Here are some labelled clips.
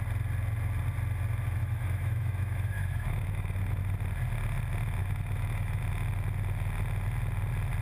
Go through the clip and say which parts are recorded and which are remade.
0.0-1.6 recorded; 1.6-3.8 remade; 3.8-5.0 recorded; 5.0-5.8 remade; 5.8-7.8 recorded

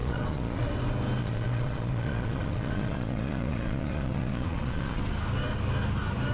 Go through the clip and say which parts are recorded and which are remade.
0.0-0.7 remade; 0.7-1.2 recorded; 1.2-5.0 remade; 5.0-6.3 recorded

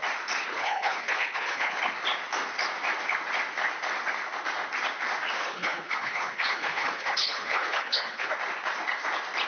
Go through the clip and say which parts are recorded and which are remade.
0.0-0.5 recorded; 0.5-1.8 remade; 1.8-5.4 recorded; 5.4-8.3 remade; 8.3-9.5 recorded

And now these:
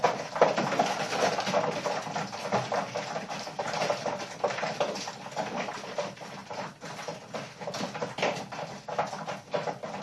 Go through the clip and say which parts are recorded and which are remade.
0.0-10.0 recorded

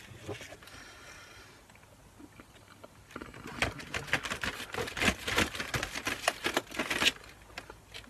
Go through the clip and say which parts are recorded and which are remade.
0.0-8.1 recorded

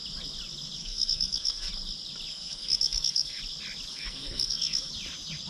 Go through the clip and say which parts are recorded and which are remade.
0.0-0.8 recorded; 0.8-1.7 remade; 1.7-2.3 recorded; 2.3-3.4 remade; 3.4-3.9 recorded; 3.9-4.9 remade; 4.9-5.5 recorded

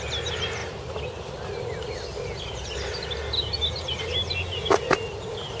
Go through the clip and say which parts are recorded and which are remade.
0.0-5.6 recorded